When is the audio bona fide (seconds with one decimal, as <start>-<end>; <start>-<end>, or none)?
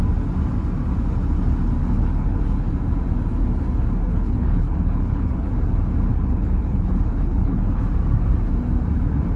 0.0-1.8; 2.4-4.1; 5.5-6.1; 7.8-9.4